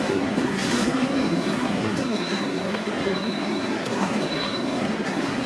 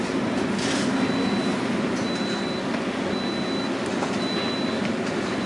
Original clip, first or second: second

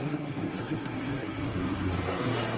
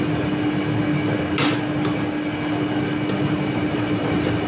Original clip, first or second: second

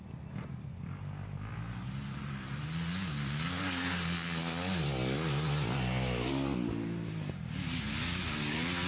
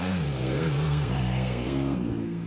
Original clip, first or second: first